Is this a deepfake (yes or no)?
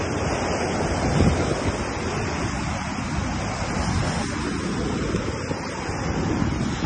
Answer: no